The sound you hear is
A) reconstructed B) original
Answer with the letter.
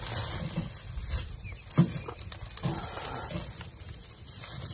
B